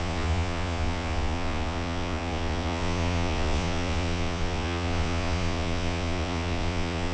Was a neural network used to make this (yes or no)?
yes